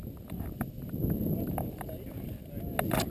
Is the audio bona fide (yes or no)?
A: yes